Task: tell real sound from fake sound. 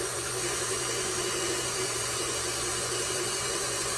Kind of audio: fake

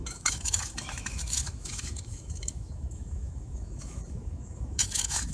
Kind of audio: fake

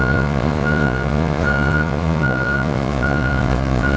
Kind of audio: fake